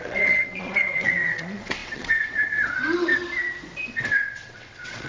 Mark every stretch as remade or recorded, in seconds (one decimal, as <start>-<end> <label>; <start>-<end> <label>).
0.0-3.1 remade; 3.1-3.9 recorded; 3.9-5.1 remade